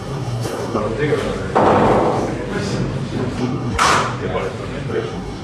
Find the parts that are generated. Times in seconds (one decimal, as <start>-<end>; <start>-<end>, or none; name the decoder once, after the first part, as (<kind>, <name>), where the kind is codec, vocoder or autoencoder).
0.0-0.8 (codec, SNAC); 3.4-3.9; 4.9-5.4